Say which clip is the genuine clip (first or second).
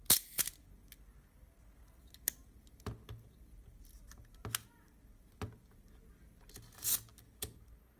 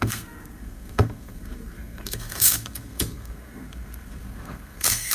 first